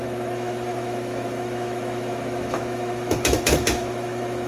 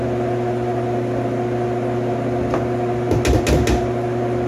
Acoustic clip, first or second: second